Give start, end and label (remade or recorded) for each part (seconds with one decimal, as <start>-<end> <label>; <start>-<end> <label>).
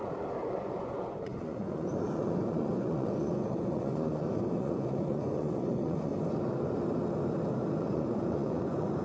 0.0-0.6 recorded; 0.6-6.1 remade; 6.1-7.8 recorded; 7.8-9.0 remade